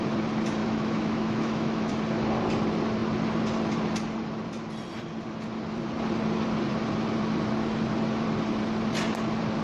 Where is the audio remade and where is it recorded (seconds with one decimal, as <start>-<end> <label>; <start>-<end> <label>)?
0.0-0.6 recorded; 0.6-1.9 remade; 1.9-9.6 recorded